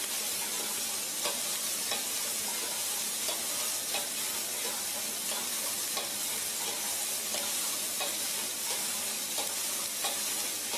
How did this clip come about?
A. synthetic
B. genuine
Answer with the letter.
B